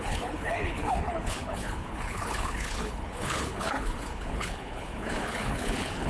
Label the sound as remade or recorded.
remade